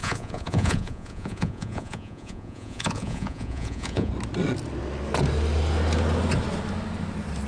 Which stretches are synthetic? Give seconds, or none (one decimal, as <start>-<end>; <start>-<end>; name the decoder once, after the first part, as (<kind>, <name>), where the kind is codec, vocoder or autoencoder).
0.0-4.1 (vocoder, Vocos)